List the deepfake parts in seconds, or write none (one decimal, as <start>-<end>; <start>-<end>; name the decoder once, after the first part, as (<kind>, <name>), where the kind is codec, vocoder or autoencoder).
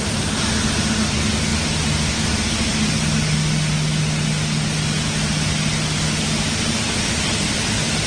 none